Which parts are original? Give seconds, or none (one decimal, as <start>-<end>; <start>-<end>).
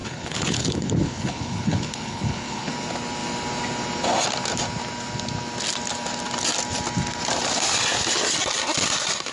2.7-9.3